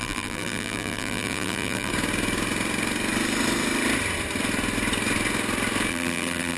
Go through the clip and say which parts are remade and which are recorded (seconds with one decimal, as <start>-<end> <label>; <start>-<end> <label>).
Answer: 0.0-1.9 remade; 1.9-5.9 recorded; 5.9-6.6 remade